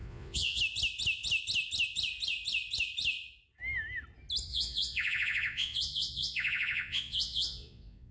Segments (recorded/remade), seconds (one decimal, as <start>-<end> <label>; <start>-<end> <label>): 0.0-0.6 remade; 0.6-4.5 recorded; 4.5-8.1 remade